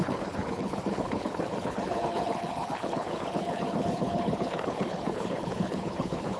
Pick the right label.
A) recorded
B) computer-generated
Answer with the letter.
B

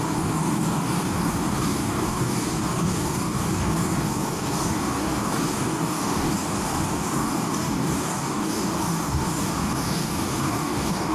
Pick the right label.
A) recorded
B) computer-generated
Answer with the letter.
B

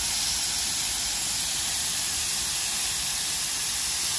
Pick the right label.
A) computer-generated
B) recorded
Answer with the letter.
B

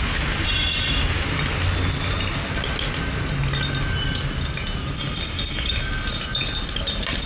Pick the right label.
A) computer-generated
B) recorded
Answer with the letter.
B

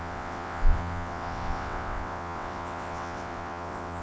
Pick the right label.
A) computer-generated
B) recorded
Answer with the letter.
A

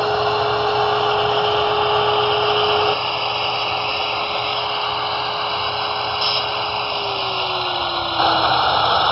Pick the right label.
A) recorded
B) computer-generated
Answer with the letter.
A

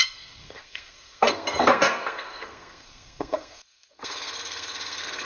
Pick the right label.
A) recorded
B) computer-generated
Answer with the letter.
B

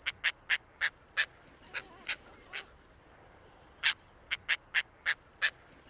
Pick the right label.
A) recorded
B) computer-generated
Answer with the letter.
A